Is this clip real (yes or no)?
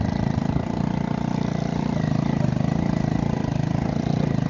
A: yes